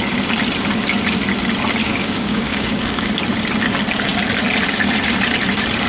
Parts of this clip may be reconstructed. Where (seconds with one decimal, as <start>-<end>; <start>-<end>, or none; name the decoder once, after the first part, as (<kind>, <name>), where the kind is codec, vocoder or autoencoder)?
1.8-3.1 (codec, DAC)